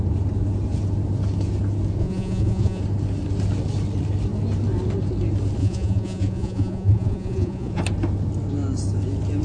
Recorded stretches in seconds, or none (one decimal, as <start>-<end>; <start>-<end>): 0.0-2.0; 2.8-5.6; 7.8-9.4